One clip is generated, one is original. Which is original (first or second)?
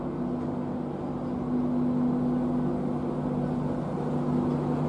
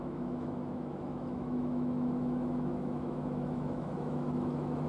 first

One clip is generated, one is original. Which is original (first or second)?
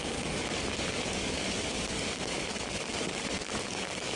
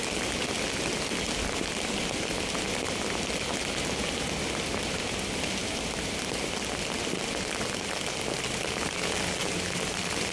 second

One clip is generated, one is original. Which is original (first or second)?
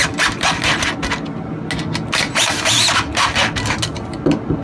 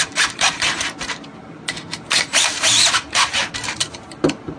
first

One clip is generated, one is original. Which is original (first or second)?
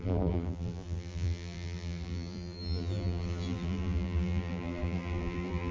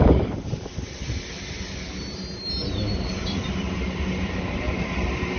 second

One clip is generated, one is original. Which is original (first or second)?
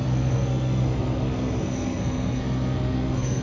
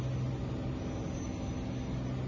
second